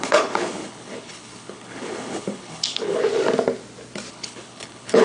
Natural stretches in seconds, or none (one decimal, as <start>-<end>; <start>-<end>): 3.0-4.1